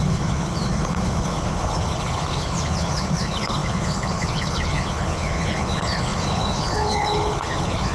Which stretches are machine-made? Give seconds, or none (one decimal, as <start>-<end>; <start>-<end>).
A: 0.0-7.9